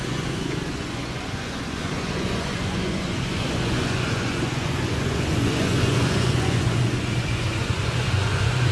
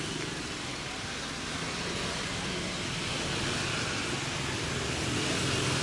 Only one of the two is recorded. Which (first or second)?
second